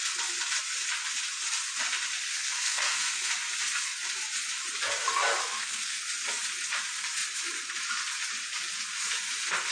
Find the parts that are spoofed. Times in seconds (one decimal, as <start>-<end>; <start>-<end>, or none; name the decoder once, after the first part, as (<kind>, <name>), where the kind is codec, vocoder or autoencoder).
2.3-3.3 (codec, SNAC); 5.4-6.0